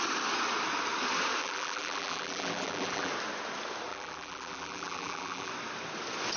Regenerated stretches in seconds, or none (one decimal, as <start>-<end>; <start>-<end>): 1.4-3.1; 3.9-5.5